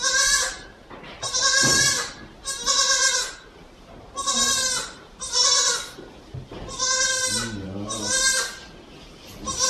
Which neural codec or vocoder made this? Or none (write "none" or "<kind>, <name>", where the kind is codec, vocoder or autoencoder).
none